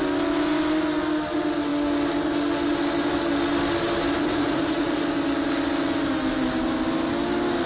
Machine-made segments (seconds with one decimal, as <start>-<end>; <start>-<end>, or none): 4.2-5.0